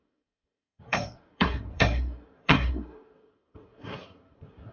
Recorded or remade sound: remade